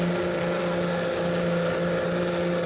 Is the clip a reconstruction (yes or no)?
no